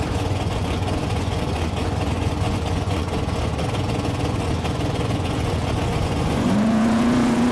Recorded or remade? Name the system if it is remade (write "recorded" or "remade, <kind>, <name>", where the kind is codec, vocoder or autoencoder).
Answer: remade, vocoder, Vocos